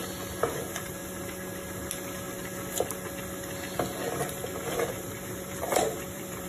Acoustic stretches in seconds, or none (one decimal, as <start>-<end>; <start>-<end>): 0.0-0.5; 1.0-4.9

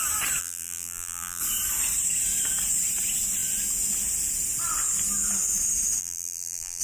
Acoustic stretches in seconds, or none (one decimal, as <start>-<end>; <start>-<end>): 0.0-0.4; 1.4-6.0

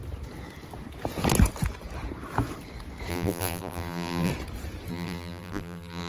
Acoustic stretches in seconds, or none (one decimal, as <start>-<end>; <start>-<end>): 0.0-3.1; 4.3-4.9

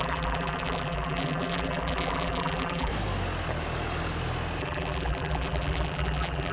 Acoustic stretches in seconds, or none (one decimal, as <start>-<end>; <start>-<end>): 2.9-4.6

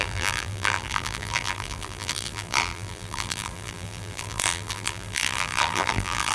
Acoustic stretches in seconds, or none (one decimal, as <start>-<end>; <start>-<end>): none

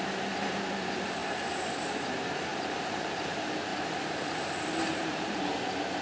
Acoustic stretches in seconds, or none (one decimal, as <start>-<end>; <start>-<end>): 0.0-2.5; 3.2-3.7; 4.3-4.9; 5.4-6.0

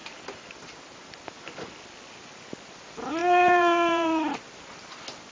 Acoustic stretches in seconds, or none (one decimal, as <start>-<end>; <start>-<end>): 1.8-3.2; 4.3-5.3